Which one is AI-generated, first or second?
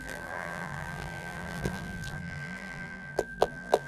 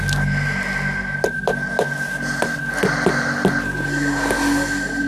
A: first